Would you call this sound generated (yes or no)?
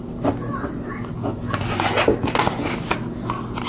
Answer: no